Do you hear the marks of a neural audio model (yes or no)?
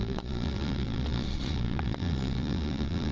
yes